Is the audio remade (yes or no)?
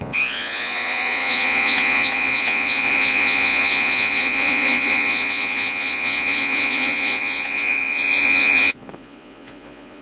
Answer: yes